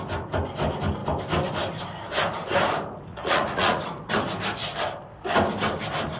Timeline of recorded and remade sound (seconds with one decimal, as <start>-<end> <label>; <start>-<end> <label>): 0.0-3.1 recorded; 3.1-3.8 remade; 3.8-6.2 recorded